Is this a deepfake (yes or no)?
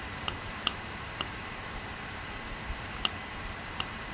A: yes